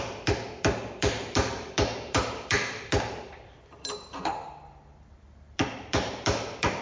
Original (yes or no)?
no